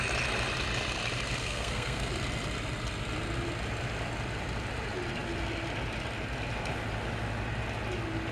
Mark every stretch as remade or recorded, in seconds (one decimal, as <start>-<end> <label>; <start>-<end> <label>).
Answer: 0.0-1.4 recorded; 1.4-2.1 remade; 2.1-8.3 recorded